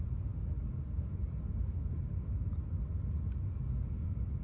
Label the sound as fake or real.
real